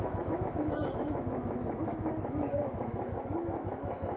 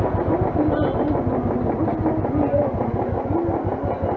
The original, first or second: second